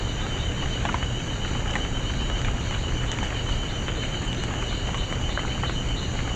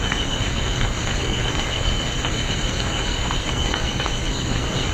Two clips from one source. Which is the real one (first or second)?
first